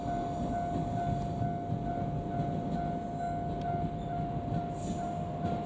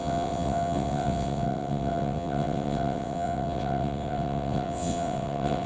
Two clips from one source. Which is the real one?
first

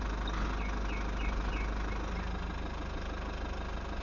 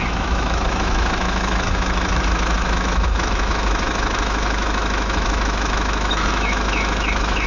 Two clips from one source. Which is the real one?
first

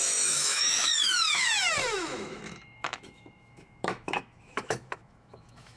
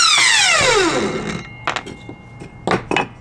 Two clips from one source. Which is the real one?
second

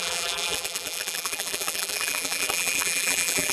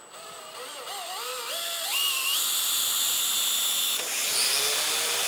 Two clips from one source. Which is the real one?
second